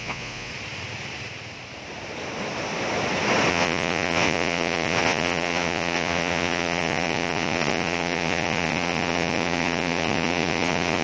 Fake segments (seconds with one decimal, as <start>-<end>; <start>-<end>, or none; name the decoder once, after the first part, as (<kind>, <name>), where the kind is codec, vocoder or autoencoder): 0.0-0.5 (vocoder, Vocos); 3.5-11.0